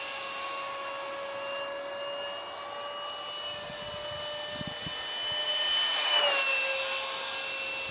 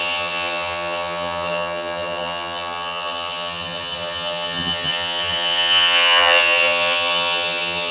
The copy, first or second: second